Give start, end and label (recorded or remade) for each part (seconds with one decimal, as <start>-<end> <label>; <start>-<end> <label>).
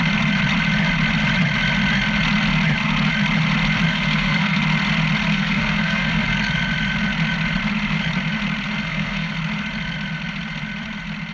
0.0-3.9 recorded; 3.9-4.6 remade; 4.6-5.3 recorded; 5.3-6.5 remade; 6.5-8.8 recorded; 8.8-9.3 remade; 9.3-11.3 recorded